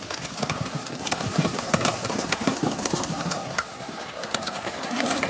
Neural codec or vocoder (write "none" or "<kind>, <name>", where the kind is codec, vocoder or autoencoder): codec, SNAC